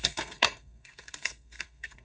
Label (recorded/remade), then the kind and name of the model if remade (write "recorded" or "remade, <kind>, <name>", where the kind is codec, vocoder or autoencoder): remade, codec, SNAC